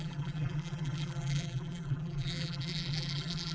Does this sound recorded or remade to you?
remade